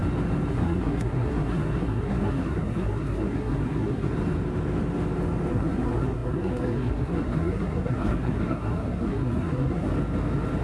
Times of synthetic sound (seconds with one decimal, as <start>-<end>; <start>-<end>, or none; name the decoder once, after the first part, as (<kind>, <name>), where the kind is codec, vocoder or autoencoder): 0.5-4.1 (codec, SNAC); 5.5-9.9

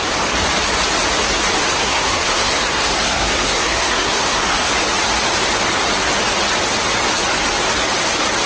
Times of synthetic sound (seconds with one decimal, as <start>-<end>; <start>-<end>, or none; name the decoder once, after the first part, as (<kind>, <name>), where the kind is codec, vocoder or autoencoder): 1.8-4.7 (codec, SNAC)

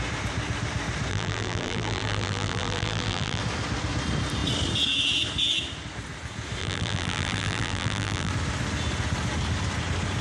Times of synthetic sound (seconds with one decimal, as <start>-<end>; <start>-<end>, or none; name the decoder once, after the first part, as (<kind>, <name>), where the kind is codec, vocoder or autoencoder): 1.1-3.4 (vocoder, BigVGAN v2); 6.6-8.3

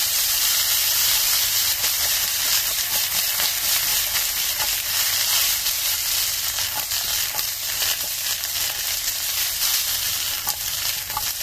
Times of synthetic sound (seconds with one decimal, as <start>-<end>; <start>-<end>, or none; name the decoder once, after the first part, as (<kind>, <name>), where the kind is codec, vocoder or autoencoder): 0.0-3.9 (vocoder, BigVGAN v2); 7.2-11.4

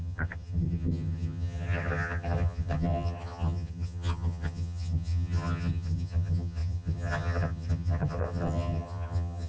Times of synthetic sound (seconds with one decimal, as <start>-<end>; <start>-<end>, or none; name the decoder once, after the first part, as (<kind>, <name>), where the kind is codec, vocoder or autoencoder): 0.0-9.5 (vocoder, HiFi-GAN)